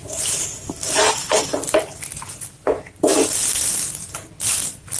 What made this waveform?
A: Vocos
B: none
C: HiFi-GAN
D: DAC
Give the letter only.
B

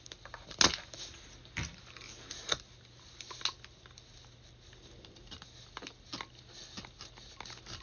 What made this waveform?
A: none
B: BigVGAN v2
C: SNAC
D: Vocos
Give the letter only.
A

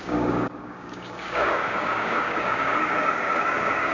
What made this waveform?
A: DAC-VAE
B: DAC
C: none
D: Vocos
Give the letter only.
B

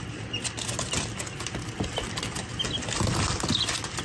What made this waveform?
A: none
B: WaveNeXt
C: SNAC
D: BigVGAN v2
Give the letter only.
A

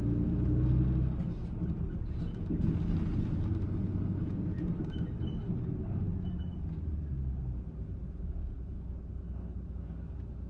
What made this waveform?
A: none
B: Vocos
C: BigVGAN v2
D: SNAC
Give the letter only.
A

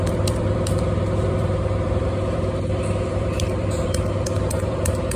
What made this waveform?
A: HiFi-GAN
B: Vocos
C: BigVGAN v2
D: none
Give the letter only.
C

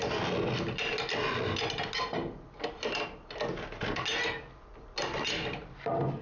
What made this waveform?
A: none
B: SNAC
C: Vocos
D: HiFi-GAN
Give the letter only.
A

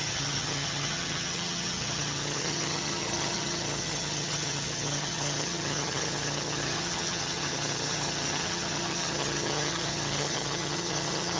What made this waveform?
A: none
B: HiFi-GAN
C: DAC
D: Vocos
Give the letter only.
B